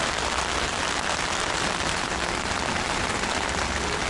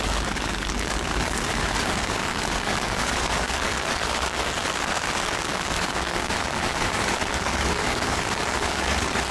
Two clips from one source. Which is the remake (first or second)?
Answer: second